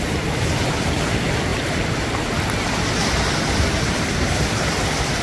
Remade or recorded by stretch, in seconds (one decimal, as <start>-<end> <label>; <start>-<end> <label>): 0.0-1.5 remade; 1.5-3.0 recorded; 3.0-5.2 remade